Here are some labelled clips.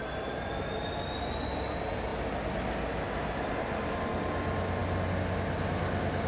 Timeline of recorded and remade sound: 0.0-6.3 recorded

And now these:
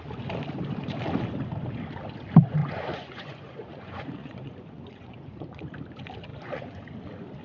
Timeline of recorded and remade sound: 0.0-2.6 recorded; 2.6-5.6 remade; 5.6-6.3 recorded; 6.3-6.9 remade; 6.9-7.4 recorded

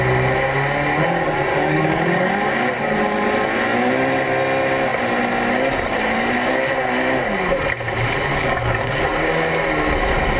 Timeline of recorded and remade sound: 0.0-1.5 recorded; 1.5-2.3 remade; 2.3-8.3 recorded; 8.3-9.0 remade; 9.0-10.4 recorded

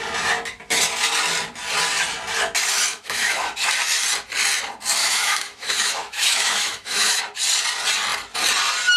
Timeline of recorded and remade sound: 0.0-2.9 recorded; 2.9-3.7 remade; 3.7-5.0 recorded; 5.0-7.2 remade; 7.2-9.0 recorded